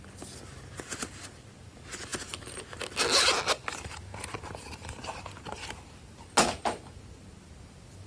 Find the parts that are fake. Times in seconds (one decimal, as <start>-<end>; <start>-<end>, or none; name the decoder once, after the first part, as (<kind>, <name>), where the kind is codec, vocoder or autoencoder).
none